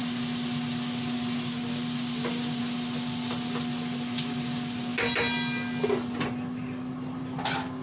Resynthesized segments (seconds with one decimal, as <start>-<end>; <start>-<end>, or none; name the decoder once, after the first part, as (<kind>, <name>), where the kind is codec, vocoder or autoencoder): none